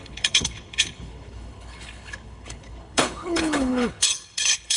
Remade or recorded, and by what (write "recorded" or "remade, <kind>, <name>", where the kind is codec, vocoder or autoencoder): remade, codec, HILCodec